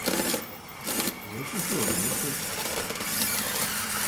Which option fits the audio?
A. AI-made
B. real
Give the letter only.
A